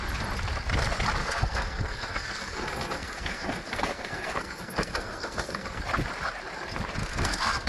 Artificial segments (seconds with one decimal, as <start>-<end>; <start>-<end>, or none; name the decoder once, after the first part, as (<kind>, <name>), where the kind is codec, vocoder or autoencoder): 1.2-5.8 (codec, SNAC); 7.0-7.7